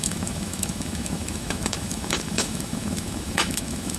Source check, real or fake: fake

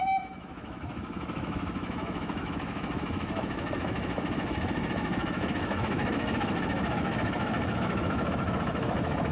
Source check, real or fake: fake